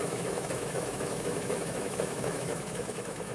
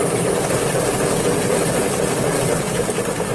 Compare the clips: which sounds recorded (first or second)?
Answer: second